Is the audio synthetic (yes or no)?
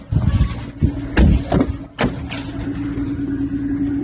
no